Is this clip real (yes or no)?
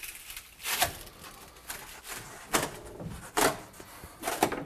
yes